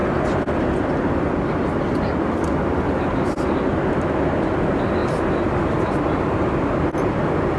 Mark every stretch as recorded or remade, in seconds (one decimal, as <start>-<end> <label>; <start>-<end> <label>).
0.0-7.6 recorded